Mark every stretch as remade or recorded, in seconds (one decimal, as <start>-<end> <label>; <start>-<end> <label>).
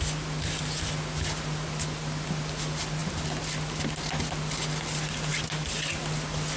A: 0.0-6.6 recorded